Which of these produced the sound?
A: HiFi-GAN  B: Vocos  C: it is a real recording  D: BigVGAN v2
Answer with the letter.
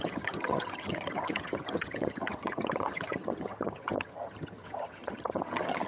A